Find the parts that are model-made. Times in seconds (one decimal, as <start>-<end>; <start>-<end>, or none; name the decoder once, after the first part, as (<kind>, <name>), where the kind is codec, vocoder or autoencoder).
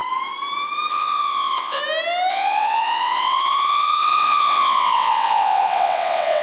0.9-1.8 (vocoder, WaveNeXt); 2.3-6.4